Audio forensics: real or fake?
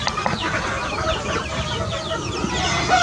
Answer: real